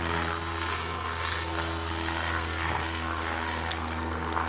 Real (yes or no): no